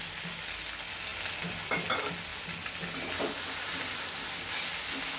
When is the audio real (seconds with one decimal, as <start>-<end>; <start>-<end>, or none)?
0.0-5.2

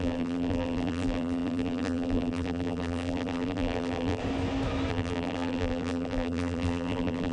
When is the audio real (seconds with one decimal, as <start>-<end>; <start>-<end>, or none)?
4.2-4.9

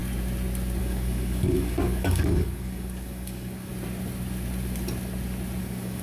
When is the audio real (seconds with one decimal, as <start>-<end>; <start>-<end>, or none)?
0.0-0.8; 3.7-5.6

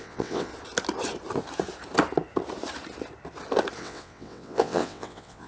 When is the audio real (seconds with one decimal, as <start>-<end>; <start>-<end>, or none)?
0.5-3.8